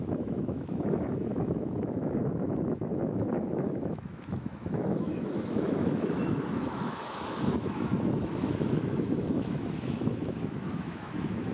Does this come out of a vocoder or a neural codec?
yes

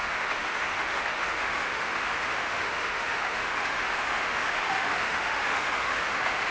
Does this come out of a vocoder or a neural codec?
yes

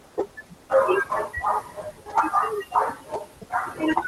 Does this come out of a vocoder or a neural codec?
no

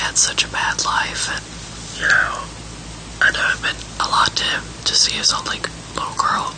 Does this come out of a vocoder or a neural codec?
no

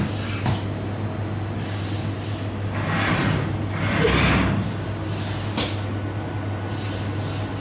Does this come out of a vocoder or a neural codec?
no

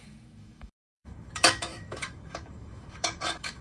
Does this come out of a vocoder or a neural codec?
yes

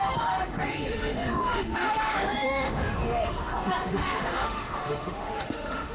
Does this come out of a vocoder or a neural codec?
yes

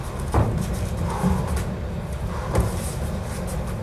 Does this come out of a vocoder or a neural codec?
no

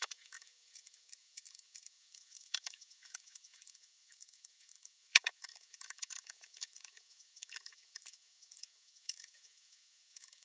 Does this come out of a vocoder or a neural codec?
yes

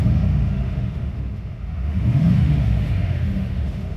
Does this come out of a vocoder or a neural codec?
yes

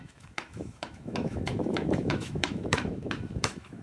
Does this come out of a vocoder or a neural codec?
yes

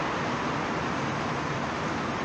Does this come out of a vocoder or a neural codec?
no